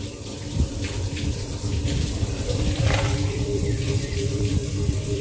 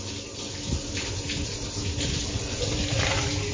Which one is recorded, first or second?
second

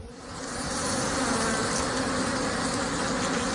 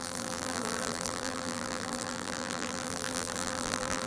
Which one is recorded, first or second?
first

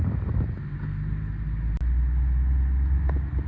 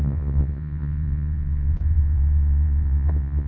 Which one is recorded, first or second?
first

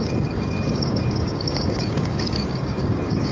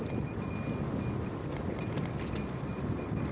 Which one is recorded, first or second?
second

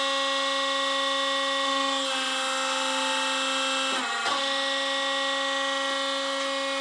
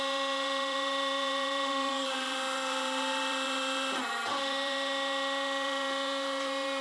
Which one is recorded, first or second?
first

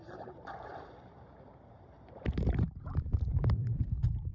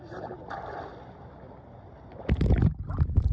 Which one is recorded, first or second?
second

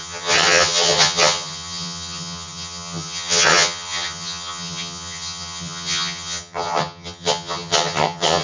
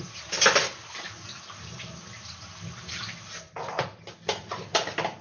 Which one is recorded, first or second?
second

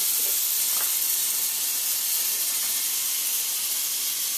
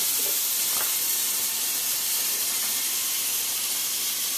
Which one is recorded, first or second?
first